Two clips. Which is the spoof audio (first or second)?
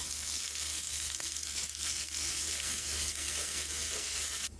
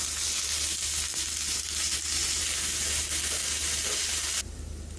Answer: first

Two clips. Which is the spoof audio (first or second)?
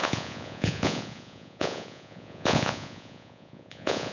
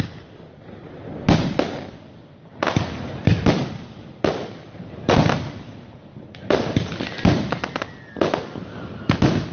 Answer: first